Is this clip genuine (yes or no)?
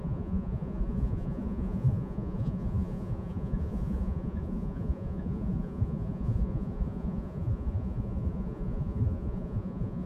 no